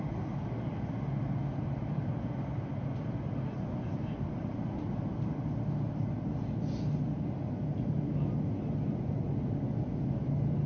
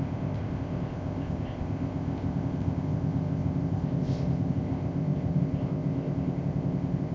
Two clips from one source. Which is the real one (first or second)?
first